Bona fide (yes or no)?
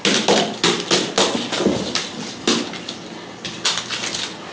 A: yes